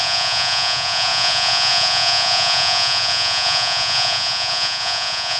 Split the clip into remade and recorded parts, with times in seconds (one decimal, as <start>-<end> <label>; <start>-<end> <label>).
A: 0.0-5.4 remade

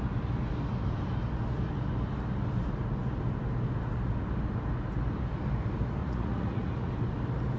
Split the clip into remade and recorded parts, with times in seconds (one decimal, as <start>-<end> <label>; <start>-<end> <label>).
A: 0.0-6.0 recorded; 6.0-6.9 remade; 6.9-7.6 recorded

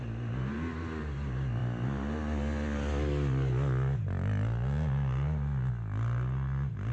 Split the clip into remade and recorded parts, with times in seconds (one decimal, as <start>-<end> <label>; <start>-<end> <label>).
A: 0.0-6.9 recorded

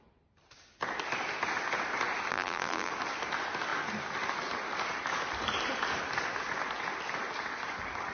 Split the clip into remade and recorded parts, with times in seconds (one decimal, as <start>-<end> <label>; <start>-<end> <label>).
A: 0.0-2.3 recorded; 2.3-2.9 remade; 2.9-8.1 recorded

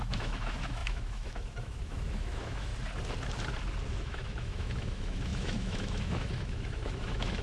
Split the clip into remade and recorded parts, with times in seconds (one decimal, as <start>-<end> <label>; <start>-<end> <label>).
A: 0.0-2.7 remade; 2.7-3.9 recorded; 3.9-7.4 remade

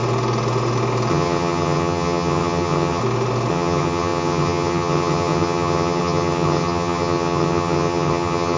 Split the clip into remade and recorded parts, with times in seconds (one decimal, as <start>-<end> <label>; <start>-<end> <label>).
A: 0.0-1.1 recorded; 1.1-3.0 remade; 3.0-3.5 recorded; 3.5-8.6 remade